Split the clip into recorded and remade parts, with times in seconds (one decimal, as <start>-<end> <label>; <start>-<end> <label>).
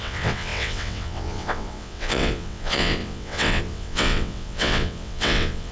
0.0-5.7 remade